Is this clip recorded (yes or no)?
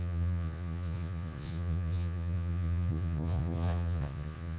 no